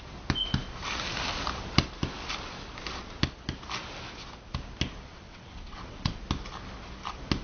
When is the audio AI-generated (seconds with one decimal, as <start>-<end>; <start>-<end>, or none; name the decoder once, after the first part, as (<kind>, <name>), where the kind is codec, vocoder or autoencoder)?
5.1-6.2 (vocoder, WaveNeXt)

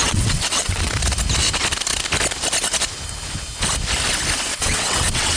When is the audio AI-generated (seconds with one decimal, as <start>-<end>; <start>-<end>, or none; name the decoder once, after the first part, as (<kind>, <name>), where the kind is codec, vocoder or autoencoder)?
0.0-0.9 (vocoder, WaveNeXt); 4.5-5.4

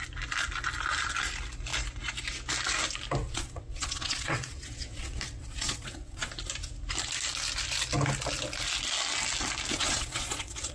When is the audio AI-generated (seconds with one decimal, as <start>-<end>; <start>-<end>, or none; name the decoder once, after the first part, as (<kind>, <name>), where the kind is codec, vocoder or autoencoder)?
3.2-6.3 (vocoder, WaveNeXt); 9.7-10.7

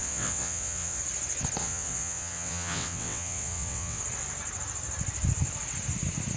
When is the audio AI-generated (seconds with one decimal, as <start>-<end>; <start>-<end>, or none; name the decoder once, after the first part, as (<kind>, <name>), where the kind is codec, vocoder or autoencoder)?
0.0-1.0 (vocoder, WaveNeXt); 1.6-4.0

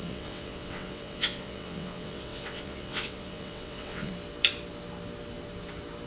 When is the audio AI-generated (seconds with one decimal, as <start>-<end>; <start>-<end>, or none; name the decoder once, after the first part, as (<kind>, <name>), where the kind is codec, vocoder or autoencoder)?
0.0-4.1 (vocoder, WaveNeXt)